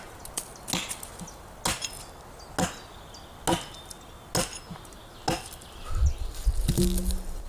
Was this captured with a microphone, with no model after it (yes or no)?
yes